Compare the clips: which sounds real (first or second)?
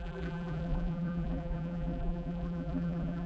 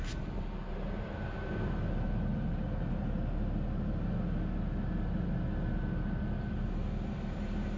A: second